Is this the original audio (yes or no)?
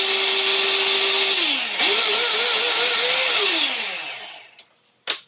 yes